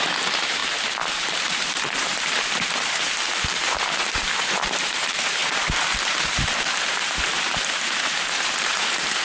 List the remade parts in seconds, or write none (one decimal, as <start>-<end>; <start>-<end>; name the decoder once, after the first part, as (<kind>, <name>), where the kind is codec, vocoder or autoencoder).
0.0-9.2 (vocoder, BigVGAN v2)